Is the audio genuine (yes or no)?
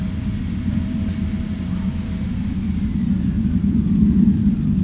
yes